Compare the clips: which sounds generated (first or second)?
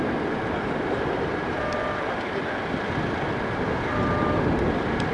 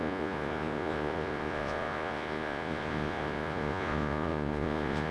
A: second